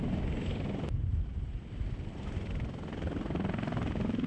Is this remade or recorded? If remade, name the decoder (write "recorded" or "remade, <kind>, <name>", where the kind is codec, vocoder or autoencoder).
recorded